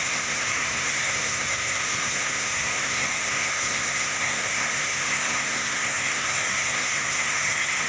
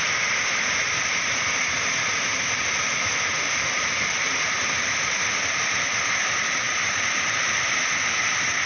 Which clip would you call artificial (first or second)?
first